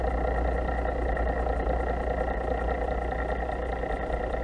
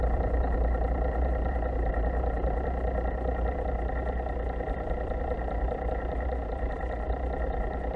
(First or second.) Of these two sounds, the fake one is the second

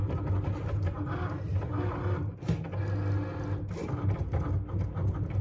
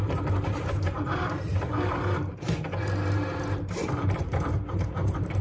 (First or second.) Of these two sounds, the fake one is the second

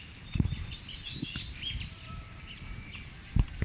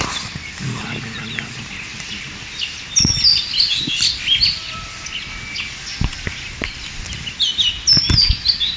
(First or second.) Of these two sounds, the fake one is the first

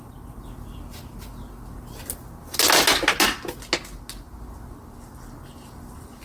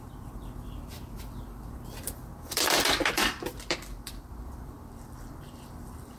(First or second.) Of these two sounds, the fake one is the second